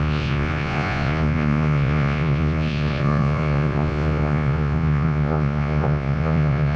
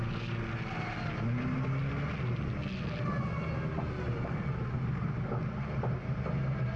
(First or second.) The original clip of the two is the second